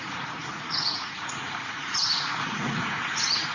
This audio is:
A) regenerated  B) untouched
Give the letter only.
A